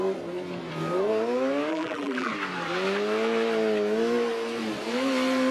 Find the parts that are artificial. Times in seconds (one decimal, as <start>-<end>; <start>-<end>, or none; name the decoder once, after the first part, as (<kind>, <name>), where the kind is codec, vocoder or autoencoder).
1.7-2.3 (vocoder, BigVGAN v2)